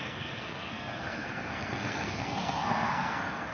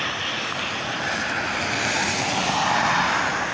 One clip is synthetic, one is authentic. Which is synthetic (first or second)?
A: first